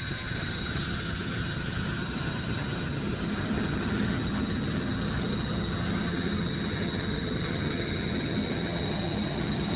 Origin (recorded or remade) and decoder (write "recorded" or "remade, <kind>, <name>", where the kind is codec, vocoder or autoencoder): remade, vocoder, HiFi-GAN